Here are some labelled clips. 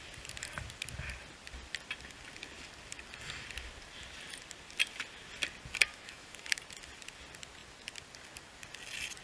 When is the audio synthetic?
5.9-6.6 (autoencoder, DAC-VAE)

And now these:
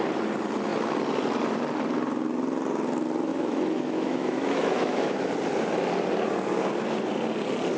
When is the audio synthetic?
3.3-5.3 (autoencoder, DAC-VAE)

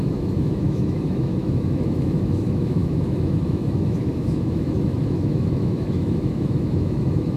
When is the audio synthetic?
0.0-7.4 (autoencoder, DAC-VAE)